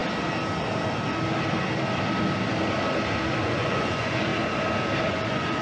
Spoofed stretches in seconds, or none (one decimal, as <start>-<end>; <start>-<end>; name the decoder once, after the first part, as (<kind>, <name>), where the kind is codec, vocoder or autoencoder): 3.4-4.3 (vocoder, Vocos); 5.0-5.6